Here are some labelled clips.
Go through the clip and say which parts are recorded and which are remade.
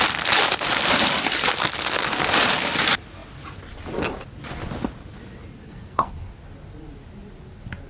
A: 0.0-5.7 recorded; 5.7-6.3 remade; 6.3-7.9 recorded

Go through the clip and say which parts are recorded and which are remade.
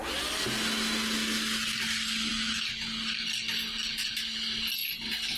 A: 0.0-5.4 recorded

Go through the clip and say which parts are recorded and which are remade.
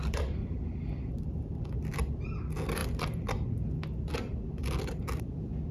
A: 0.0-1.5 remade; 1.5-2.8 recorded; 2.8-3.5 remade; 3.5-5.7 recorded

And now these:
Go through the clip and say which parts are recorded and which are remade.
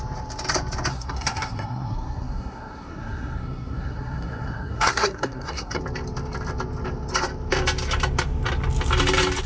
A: 0.0-0.9 recorded; 0.9-5.8 remade; 5.8-9.5 recorded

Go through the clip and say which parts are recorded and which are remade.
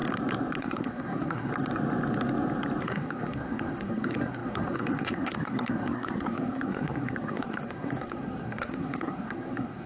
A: 0.0-0.6 recorded; 0.6-1.5 remade; 1.5-2.8 recorded; 2.8-9.9 remade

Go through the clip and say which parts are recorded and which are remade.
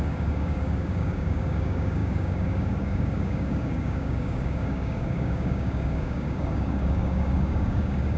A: 0.0-8.2 remade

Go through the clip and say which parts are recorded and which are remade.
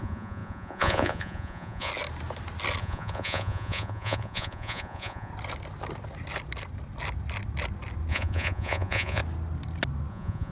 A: 0.0-1.9 remade; 1.9-2.8 recorded; 2.8-5.3 remade; 5.3-8.1 recorded; 8.1-9.2 remade; 9.2-10.1 recorded; 10.1-10.5 remade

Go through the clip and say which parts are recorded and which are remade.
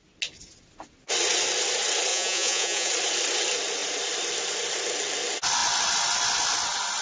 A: 0.0-2.1 recorded; 2.1-2.9 remade; 2.9-7.0 recorded